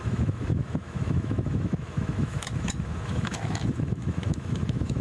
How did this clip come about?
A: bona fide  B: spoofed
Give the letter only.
B